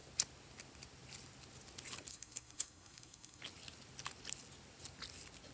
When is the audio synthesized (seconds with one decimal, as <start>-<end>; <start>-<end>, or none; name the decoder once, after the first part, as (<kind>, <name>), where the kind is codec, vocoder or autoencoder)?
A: 2.1-3.4 (codec, SNAC)